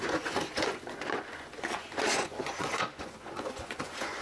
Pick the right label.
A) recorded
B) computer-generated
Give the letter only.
B